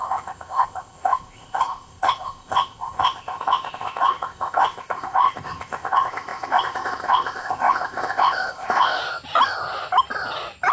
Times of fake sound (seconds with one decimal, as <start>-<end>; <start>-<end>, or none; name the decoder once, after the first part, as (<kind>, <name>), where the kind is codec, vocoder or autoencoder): 0.0-9.0 (codec, ZipCodec)